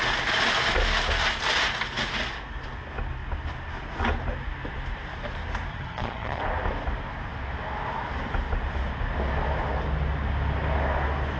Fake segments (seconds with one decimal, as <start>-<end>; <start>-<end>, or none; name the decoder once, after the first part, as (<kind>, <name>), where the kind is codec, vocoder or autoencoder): 5.7-6.4 (vocoder, HiFi-GAN)